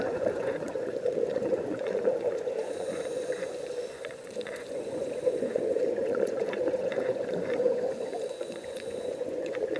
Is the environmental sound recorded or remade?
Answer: remade